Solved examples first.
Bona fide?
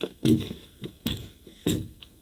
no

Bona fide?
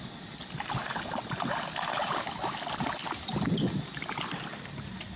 yes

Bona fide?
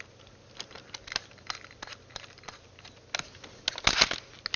yes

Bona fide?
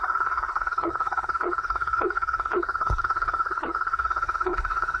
no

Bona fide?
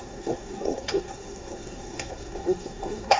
no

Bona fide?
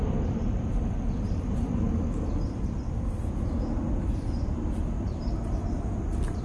yes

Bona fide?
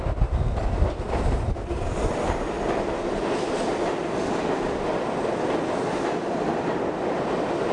yes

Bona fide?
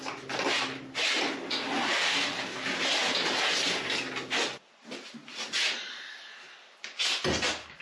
yes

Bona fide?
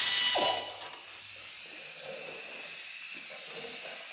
yes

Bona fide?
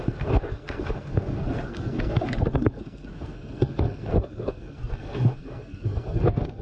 no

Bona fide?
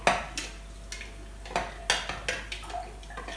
yes